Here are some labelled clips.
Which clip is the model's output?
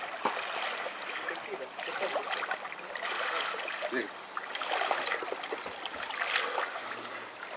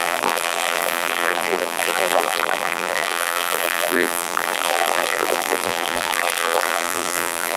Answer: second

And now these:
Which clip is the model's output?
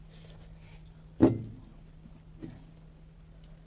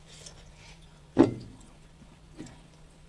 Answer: second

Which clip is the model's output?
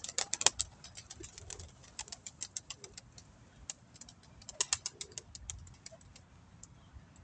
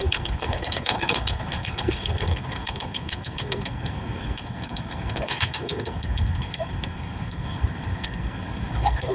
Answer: second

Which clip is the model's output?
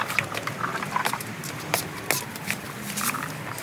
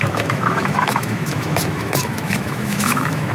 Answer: second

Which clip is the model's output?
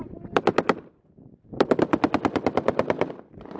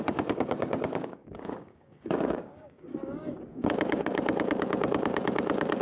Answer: second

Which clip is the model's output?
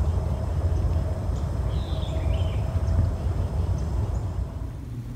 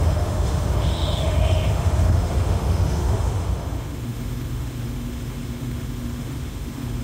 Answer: second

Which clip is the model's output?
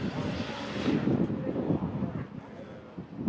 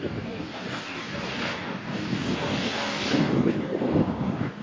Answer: second